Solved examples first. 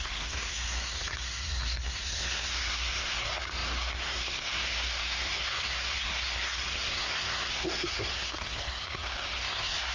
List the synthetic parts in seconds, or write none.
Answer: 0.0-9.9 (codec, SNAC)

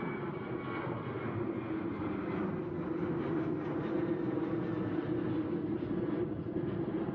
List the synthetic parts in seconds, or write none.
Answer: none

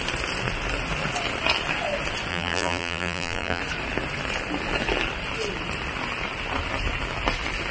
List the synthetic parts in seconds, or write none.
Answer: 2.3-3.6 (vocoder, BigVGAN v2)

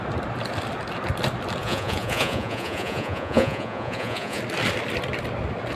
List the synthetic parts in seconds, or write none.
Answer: 1.6-4.4 (vocoder, Vocos)